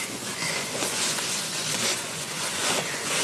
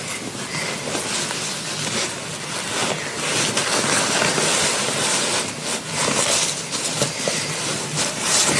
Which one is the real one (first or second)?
second